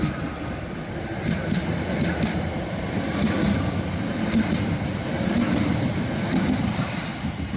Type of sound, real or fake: real